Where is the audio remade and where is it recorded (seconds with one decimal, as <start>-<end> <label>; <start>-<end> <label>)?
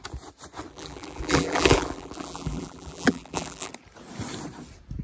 0.0-0.7 recorded; 0.7-3.7 remade; 3.7-5.0 recorded